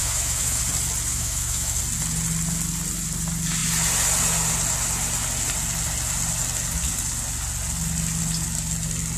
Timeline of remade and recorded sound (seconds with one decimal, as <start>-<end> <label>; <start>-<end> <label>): 0.0-0.6 remade; 0.6-1.1 recorded; 1.1-1.8 remade; 1.8-9.2 recorded